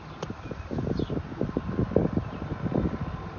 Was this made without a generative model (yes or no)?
yes